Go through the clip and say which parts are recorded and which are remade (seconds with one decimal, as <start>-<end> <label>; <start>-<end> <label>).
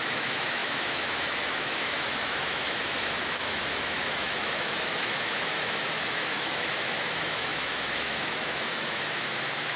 0.0-9.8 remade